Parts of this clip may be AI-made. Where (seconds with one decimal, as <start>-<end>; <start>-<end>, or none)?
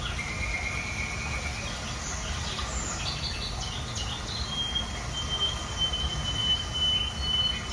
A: 6.4-7.1